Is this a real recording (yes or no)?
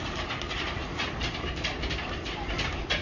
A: yes